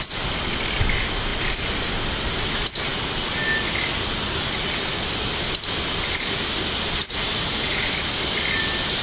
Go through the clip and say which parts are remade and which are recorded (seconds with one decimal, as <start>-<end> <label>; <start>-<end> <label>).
0.0-9.0 recorded